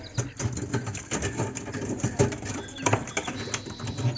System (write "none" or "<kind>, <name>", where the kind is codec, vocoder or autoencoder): none